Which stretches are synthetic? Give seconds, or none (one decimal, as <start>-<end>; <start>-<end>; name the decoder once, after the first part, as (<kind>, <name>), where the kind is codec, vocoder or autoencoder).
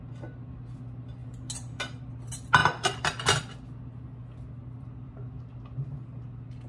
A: 2.6-3.3 (vocoder, BigVGAN v2); 4.6-5.2